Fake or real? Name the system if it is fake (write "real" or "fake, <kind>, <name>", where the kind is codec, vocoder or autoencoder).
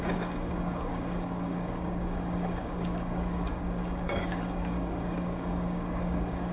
fake, codec, DAC